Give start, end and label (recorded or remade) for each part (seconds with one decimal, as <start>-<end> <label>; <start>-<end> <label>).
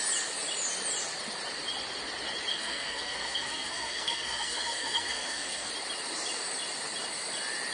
0.0-2.5 recorded; 2.5-5.7 remade; 5.7-7.7 recorded